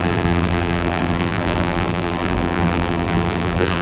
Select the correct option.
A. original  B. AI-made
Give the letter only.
B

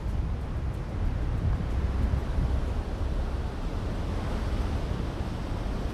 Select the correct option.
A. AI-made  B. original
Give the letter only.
B